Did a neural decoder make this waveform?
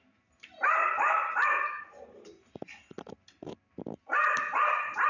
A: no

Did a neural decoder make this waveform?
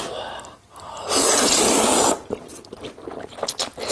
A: no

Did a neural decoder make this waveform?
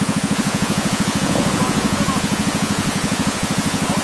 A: yes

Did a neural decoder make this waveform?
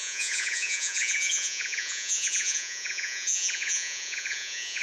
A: yes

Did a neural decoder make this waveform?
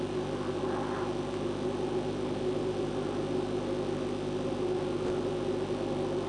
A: no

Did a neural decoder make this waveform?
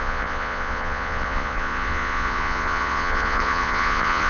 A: yes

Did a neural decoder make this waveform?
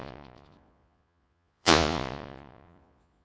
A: yes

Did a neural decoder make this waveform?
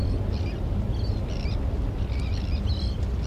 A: no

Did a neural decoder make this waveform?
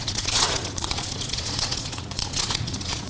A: yes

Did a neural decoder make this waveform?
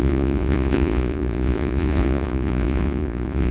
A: yes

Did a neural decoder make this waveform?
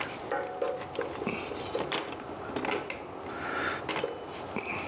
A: no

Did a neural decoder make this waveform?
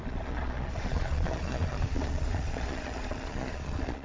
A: yes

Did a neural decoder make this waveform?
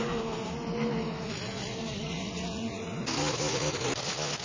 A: no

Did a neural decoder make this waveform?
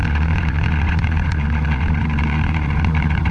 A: yes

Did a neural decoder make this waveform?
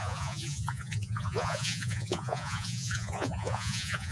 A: yes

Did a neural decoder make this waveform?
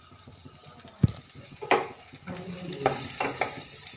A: no